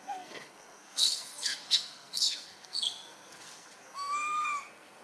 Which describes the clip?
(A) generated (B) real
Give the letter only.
A